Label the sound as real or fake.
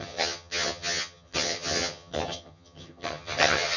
fake